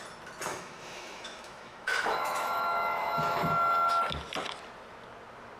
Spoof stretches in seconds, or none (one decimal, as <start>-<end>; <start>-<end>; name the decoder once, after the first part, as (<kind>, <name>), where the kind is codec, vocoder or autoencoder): 0.5-3.9 (autoencoder, DAC-VAE)